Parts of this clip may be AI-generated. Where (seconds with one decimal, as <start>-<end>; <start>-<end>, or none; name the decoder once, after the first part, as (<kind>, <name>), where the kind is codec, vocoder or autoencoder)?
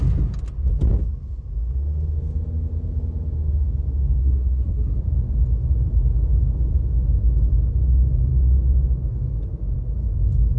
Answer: 4.2-5.0 (codec, SNAC)